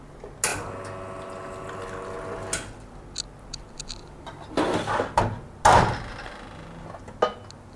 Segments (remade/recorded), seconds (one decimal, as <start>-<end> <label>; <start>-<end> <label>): 0.0-7.8 recorded

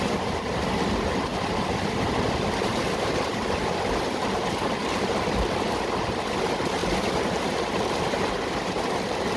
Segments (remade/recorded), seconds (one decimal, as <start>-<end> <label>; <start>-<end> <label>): 0.0-1.3 recorded; 1.3-4.3 remade; 4.3-9.4 recorded

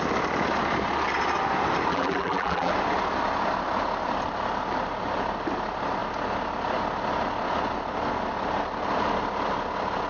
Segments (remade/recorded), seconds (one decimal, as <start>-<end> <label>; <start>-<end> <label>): 0.0-1.9 recorded; 1.9-2.7 remade; 2.7-10.1 recorded

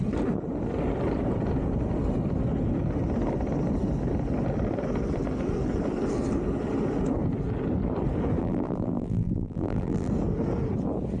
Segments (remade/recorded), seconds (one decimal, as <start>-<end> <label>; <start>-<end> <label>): 0.0-8.4 recorded; 8.4-10.1 remade; 10.1-11.2 recorded

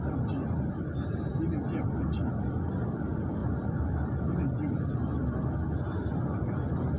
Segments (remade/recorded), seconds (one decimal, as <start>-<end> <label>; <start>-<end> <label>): 0.0-7.0 recorded

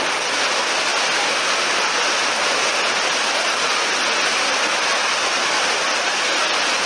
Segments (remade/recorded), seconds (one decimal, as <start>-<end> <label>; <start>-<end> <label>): 0.0-6.9 recorded